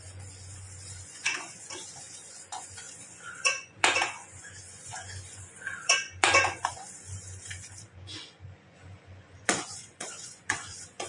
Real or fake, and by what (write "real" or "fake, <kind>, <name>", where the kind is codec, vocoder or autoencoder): fake, vocoder, Vocos